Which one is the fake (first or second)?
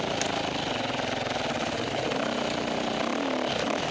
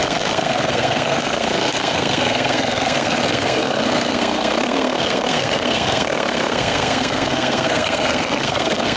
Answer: second